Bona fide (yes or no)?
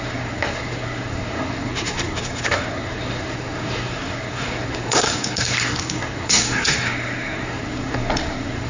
no